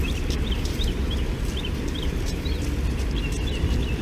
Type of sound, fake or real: real